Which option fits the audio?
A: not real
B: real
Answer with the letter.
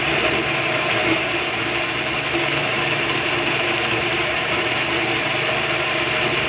A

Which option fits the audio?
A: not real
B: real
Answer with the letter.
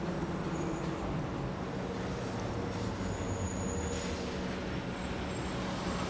B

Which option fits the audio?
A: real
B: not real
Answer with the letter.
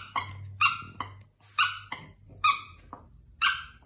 A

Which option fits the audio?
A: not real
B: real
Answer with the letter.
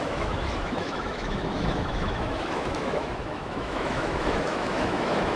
A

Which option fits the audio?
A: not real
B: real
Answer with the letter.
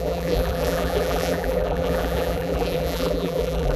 A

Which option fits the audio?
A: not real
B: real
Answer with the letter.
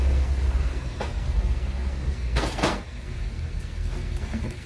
A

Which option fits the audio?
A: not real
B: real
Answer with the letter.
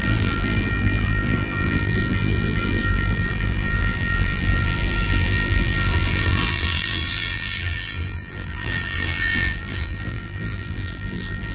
A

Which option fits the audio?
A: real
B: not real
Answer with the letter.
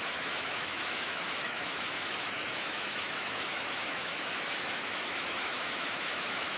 B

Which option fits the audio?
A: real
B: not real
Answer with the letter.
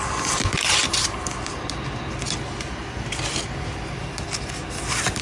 A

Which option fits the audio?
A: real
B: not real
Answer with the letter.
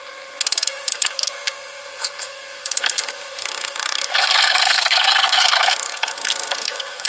B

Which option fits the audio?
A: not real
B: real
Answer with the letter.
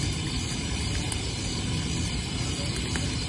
A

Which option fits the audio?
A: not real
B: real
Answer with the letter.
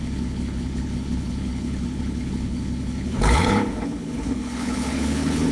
A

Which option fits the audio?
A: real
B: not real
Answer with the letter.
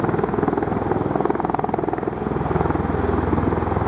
A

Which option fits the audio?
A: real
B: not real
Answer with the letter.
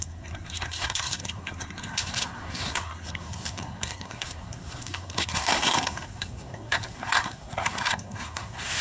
B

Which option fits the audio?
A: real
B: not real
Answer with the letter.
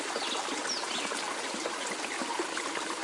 A